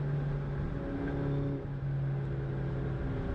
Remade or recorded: recorded